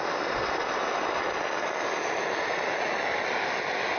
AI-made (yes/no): no